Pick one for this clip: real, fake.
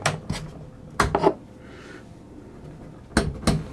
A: real